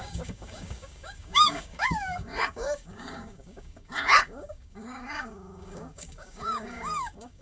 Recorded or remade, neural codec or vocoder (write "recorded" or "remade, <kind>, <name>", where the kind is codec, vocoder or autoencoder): remade, codec, DAC